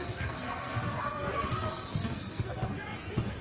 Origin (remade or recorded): remade